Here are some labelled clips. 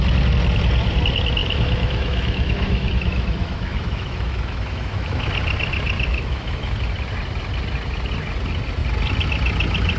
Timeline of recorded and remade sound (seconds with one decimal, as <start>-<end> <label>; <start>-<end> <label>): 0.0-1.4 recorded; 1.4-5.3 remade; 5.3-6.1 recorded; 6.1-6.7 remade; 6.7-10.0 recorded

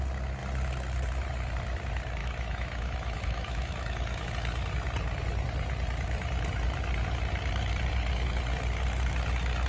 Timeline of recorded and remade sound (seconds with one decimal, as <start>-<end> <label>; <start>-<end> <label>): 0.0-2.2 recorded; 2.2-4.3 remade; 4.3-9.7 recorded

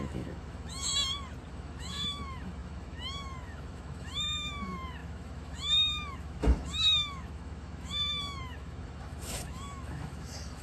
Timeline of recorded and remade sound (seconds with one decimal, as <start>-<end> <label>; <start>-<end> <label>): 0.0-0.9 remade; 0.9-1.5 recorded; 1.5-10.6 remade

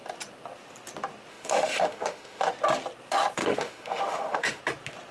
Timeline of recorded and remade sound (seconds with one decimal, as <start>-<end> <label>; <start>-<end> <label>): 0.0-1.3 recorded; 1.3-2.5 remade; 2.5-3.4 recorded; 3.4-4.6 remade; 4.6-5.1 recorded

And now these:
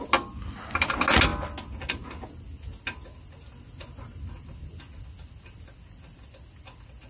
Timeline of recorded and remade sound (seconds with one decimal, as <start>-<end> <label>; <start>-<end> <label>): 0.0-7.1 recorded

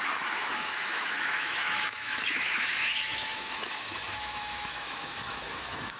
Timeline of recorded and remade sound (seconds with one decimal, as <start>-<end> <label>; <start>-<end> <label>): 0.0-6.0 remade

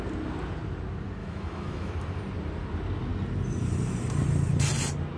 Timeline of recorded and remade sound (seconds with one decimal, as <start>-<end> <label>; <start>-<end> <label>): 0.0-1.2 recorded; 1.2-1.9 remade; 1.9-5.2 recorded

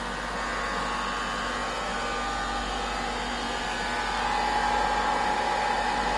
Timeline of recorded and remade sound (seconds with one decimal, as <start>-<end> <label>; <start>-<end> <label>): 0.0-6.2 recorded